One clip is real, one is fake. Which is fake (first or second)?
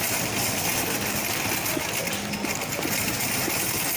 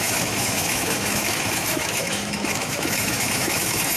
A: second